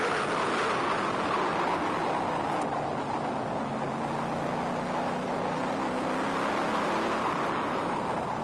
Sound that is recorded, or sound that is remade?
recorded